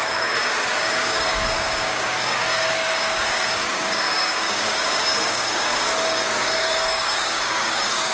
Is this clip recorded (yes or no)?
no